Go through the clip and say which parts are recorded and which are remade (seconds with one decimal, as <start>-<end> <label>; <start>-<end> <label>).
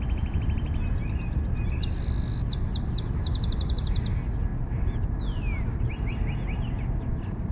0.0-7.5 recorded